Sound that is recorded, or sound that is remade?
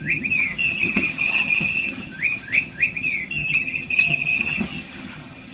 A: remade